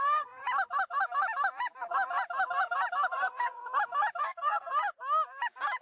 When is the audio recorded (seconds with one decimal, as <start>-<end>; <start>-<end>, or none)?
0.4-3.1; 3.6-4.2; 4.7-5.8